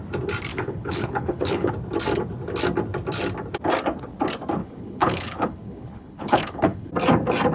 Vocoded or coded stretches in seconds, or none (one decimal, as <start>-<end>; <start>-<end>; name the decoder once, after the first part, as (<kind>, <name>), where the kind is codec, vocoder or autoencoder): 0.5-1.7 (codec, HILCodec); 4.6-6.9